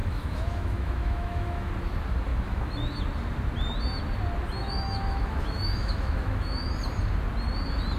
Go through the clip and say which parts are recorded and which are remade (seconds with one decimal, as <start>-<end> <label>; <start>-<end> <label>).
0.0-1.7 remade; 1.7-2.3 recorded; 2.3-2.8 remade; 2.8-4.6 recorded; 4.6-6.7 remade; 6.7-8.0 recorded